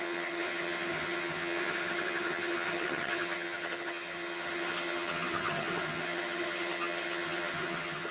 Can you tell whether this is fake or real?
fake